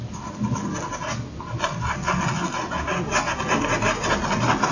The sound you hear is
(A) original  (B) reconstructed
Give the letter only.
A